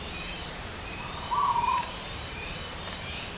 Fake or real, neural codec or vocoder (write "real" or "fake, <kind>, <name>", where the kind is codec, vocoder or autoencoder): fake, vocoder, BigVGAN v2